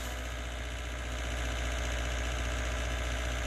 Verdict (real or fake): real